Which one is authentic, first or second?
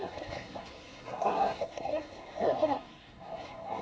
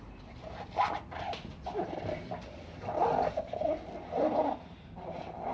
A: second